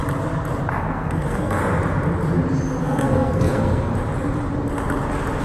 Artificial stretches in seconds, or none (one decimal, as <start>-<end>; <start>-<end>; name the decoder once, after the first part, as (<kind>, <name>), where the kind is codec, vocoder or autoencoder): 0.8-1.6 (codec, SNAC); 2.8-3.9